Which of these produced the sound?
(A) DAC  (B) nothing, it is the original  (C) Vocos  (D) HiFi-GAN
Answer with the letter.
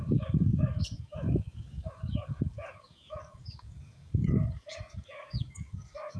A